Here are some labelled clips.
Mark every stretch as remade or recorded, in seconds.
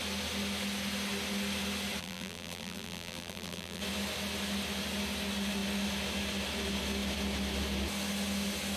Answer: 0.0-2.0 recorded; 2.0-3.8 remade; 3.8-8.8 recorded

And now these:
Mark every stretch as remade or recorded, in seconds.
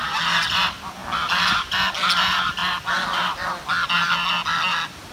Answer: 0.0-5.1 recorded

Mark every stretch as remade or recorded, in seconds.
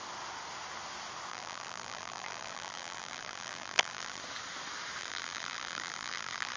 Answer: 0.0-1.3 recorded; 1.3-4.2 remade; 4.2-5.0 recorded; 5.0-6.6 remade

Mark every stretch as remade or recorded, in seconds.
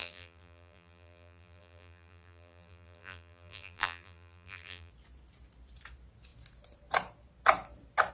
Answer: 0.0-4.9 remade; 4.9-8.1 recorded